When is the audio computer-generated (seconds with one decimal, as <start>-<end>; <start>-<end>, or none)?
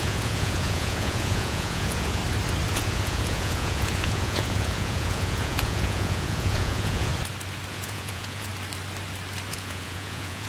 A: 0.0-2.2; 2.7-7.1; 7.7-8.5; 9.5-10.5